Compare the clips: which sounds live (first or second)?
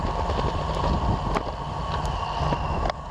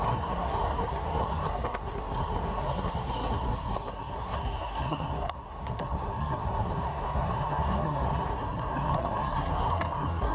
first